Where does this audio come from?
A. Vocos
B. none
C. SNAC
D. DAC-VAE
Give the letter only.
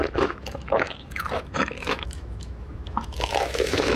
D